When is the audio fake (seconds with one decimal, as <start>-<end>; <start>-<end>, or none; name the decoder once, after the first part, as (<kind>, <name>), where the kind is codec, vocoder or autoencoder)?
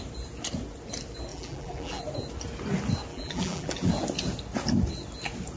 1.3-2.0 (vocoder, BigVGAN v2); 3.1-3.9